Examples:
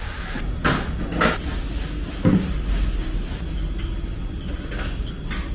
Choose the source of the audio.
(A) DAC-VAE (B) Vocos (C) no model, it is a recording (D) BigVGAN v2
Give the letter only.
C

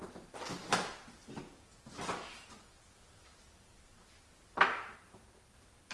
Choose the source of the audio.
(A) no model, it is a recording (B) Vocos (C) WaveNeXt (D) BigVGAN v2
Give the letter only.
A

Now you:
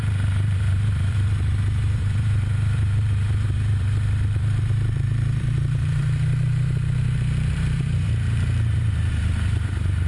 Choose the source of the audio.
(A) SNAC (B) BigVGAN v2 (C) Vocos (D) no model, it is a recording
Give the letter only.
B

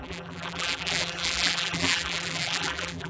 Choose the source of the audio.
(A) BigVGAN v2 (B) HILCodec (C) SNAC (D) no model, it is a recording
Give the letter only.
A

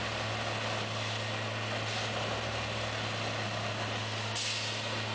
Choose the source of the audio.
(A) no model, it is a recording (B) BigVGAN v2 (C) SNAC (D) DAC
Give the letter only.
A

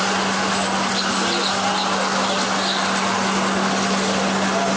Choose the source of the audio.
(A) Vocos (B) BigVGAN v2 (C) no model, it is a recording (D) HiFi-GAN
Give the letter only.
C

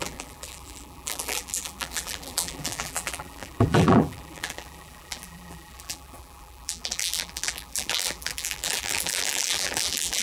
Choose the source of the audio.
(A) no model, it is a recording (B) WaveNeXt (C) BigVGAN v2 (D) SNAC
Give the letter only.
C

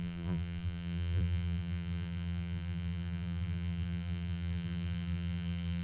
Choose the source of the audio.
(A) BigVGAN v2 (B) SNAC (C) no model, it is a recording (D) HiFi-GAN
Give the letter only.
A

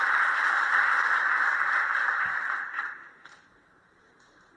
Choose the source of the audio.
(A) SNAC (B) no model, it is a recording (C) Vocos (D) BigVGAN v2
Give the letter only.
D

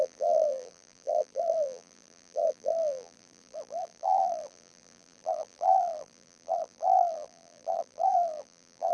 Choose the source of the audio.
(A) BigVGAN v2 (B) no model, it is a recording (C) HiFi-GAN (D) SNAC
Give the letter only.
A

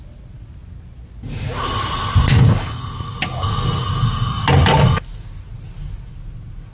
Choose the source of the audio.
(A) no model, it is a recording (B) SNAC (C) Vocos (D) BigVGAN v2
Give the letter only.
A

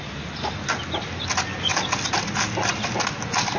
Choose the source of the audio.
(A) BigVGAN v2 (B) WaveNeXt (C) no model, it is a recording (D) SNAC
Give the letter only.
C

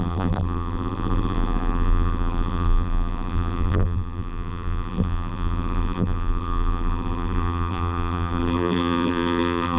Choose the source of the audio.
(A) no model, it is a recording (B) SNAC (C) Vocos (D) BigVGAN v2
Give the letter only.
D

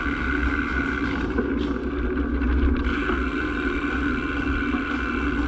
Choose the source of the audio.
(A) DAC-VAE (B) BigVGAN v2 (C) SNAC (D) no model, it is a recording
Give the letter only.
D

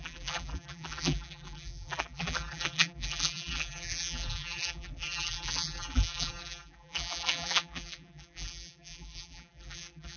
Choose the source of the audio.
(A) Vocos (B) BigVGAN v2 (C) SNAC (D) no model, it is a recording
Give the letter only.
B